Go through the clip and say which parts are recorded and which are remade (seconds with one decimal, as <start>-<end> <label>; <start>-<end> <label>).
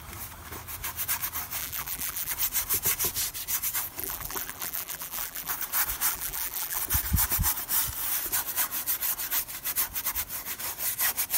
0.0-1.6 recorded; 1.6-2.3 remade; 2.3-4.0 recorded; 4.0-5.5 remade; 5.5-6.1 recorded; 6.1-6.8 remade; 6.8-11.4 recorded